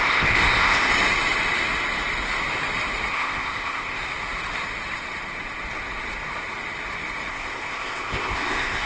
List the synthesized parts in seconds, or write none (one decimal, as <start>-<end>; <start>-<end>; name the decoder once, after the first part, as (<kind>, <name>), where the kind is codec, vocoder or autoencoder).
0.0-0.9 (codec, ZipCodec); 3.1-4.0; 7.3-8.9